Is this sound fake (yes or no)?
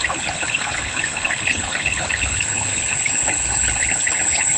yes